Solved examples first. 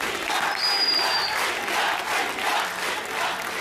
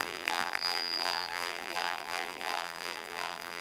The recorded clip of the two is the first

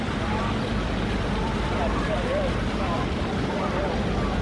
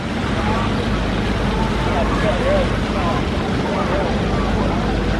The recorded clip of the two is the second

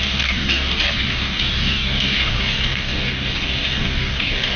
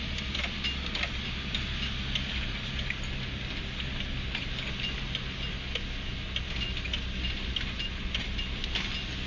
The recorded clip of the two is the second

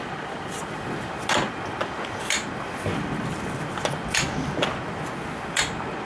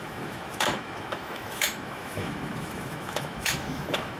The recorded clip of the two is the first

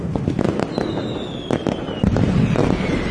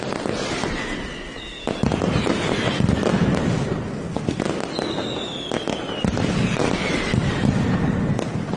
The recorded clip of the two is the second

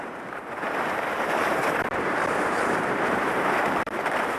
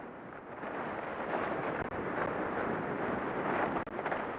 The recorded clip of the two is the second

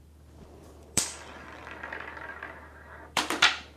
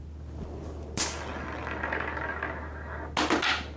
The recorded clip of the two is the second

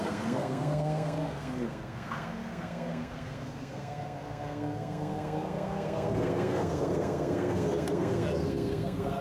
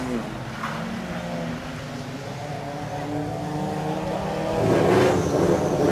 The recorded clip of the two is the second